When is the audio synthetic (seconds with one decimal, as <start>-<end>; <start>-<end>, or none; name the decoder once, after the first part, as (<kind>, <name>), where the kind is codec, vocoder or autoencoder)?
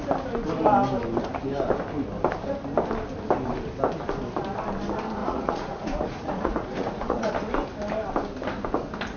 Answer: 5.2-7.3 (vocoder, Vocos)